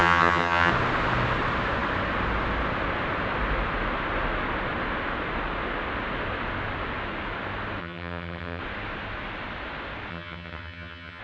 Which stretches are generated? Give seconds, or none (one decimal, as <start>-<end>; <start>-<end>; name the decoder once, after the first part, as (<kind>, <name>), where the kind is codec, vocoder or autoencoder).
0.0-0.7 (vocoder, HiFi-GAN); 7.8-8.6; 10.1-11.2